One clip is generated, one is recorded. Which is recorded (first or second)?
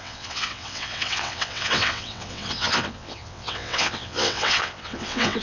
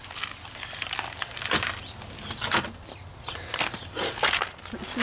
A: second